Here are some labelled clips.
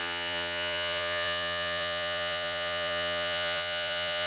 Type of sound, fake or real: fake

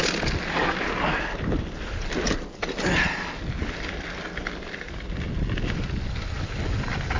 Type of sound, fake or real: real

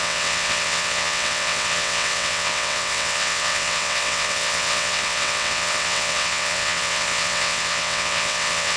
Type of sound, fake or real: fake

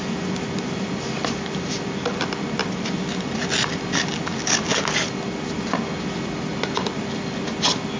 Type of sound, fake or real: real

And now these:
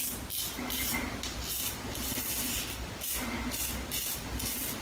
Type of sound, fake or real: real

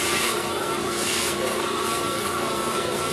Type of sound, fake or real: fake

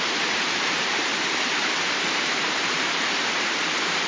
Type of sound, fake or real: fake